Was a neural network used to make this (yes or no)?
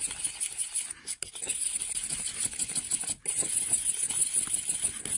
no